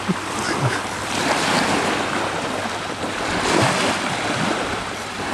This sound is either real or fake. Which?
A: real